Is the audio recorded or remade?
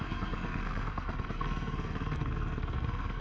remade